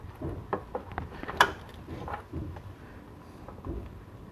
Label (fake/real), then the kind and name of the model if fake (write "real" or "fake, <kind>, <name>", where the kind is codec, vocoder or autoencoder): real